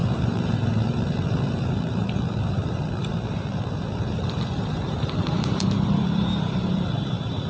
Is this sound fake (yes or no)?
yes